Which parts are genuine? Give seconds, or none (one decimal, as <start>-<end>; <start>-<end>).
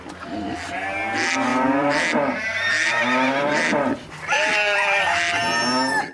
0.0-1.5; 5.0-6.1